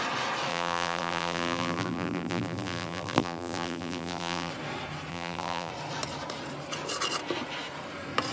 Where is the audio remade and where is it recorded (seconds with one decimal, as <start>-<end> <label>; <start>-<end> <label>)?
0.0-0.5 recorded; 0.5-4.5 remade; 4.5-5.1 recorded; 5.1-5.7 remade; 5.7-8.3 recorded